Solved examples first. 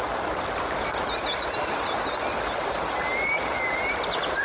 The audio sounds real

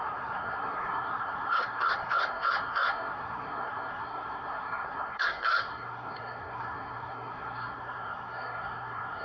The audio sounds fake